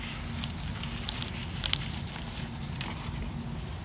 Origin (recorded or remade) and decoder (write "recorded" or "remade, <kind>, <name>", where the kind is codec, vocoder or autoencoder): recorded